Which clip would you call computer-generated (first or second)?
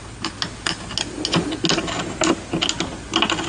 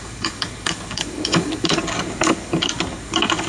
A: second